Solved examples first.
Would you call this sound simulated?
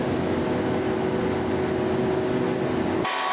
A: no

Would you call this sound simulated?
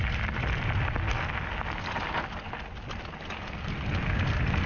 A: no